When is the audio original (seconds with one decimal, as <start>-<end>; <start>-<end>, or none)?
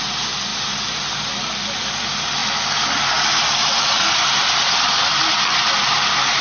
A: 0.0-6.4